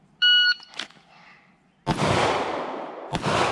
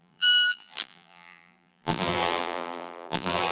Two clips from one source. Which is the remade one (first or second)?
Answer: second